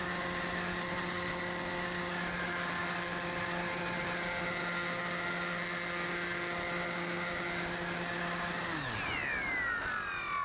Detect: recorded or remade recorded